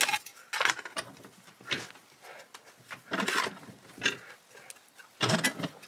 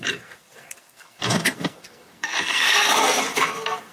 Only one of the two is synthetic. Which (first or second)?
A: second